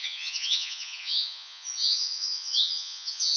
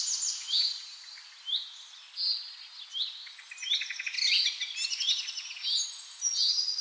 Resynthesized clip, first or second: first